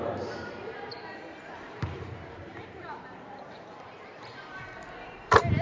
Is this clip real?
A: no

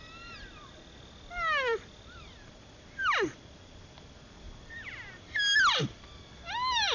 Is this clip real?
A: yes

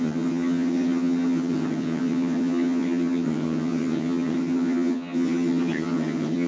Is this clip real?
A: no